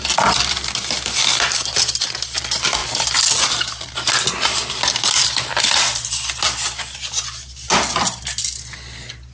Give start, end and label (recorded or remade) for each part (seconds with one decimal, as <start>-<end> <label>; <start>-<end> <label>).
0.0-9.3 recorded